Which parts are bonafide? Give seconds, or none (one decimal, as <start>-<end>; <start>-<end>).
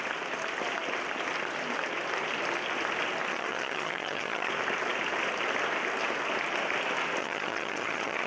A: 0.0-3.3; 4.5-7.2